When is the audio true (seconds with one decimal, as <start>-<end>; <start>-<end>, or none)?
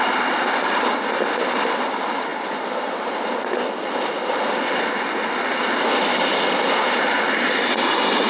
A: 0.0-8.3